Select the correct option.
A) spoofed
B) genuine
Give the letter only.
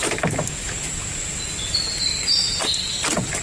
B